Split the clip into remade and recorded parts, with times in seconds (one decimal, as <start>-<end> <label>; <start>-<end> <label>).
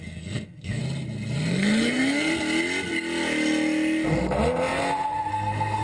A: 0.0-0.8 remade; 0.8-1.5 recorded; 1.5-2.3 remade; 2.3-5.3 recorded; 5.3-5.8 remade